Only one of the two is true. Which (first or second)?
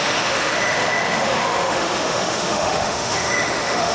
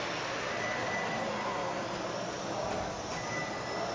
second